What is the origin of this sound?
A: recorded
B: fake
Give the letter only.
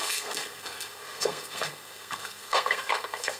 B